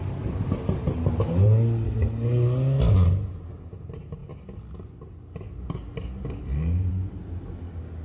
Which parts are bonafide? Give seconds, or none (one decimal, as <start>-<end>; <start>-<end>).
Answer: 0.0-8.0